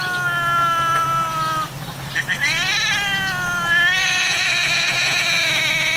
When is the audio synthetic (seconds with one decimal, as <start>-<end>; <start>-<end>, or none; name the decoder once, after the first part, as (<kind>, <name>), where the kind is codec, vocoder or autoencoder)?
4.0-5.4 (vocoder, Vocos)